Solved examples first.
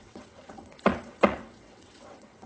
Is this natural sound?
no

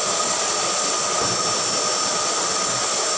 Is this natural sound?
yes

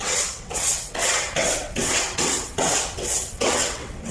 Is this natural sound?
no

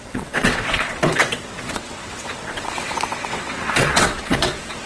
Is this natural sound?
no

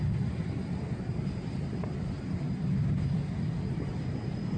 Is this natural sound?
yes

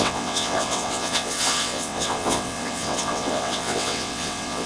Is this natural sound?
no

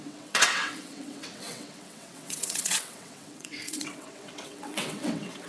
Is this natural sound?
no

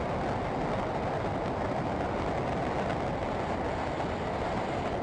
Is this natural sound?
yes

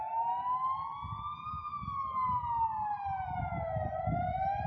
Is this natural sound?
yes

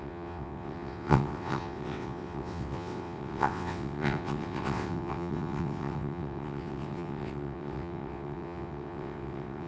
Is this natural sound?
no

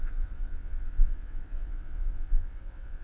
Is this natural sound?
no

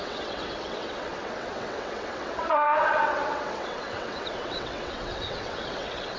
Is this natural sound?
no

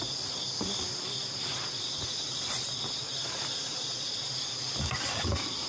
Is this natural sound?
yes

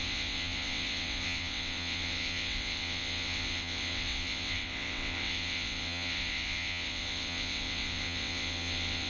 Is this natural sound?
no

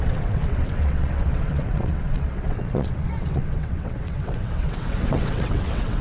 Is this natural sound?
no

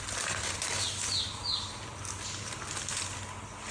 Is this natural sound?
yes